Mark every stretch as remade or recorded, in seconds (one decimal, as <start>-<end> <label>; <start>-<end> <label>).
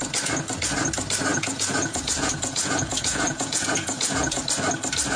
0.0-1.3 recorded; 1.3-4.4 remade; 4.4-5.2 recorded